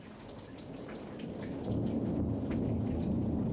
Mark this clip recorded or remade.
recorded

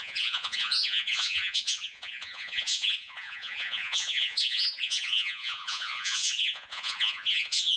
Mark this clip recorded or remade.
remade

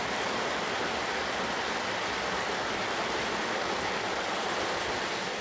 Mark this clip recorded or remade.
recorded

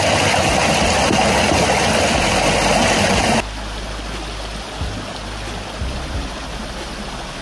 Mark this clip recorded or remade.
recorded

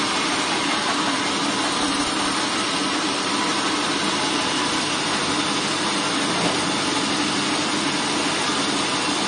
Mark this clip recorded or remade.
recorded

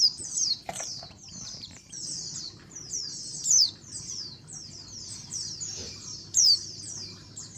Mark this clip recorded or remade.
remade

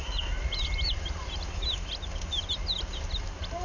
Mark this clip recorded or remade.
recorded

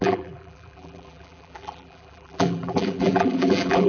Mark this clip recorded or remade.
remade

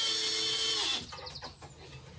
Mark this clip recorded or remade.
recorded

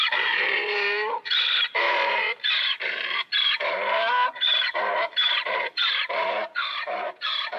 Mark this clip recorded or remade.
remade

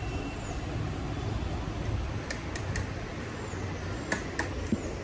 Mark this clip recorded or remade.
recorded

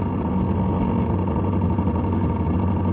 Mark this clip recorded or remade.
recorded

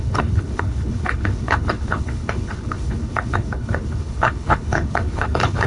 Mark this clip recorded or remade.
remade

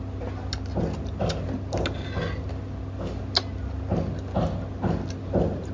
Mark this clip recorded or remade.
recorded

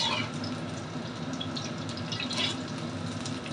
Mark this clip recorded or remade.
recorded